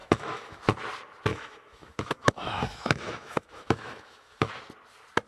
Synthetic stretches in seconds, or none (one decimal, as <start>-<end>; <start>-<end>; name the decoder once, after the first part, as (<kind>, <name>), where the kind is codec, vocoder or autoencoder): 0.0-0.6 (autoencoder, DAC-VAE); 1.3-4.5